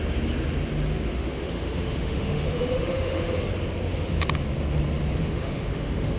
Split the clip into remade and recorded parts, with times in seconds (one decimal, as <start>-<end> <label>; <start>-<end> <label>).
0.0-1.1 recorded; 1.1-3.4 remade; 3.4-5.2 recorded; 5.2-6.2 remade